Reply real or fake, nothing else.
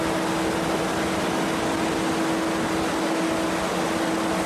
real